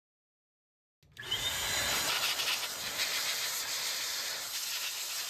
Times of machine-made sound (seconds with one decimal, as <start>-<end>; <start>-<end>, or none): none